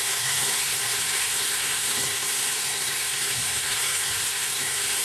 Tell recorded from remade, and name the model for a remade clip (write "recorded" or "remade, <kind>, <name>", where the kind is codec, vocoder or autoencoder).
remade, codec, SNAC